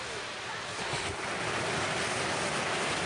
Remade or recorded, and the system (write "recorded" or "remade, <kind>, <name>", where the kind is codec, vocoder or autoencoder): recorded